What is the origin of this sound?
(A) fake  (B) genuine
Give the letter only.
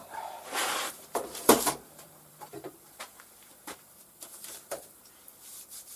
A